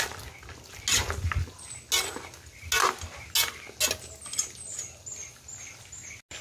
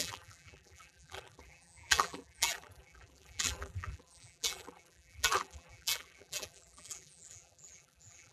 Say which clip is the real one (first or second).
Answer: first